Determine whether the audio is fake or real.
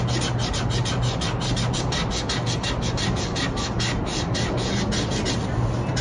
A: real